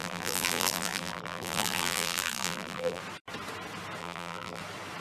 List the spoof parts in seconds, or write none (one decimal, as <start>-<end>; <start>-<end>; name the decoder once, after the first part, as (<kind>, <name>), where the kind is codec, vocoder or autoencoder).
0.0-3.0 (vocoder, BigVGAN v2); 4.0-4.6